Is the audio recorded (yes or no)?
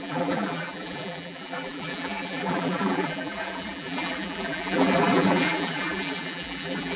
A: no